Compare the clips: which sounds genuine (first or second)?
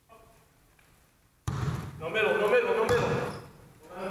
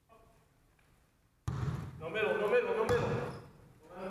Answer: second